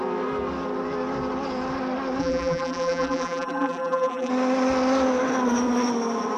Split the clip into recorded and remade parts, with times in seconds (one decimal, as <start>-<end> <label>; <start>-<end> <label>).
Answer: 0.0-2.2 recorded; 2.2-4.3 remade; 4.3-6.4 recorded